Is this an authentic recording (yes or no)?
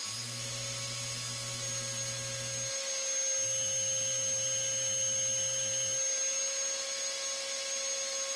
yes